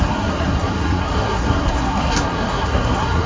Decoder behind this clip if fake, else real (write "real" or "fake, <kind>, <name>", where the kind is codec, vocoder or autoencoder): fake, codec, SNAC